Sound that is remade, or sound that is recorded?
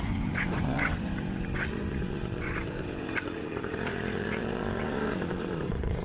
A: remade